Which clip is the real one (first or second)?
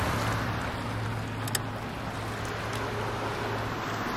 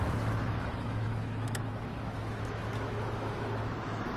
first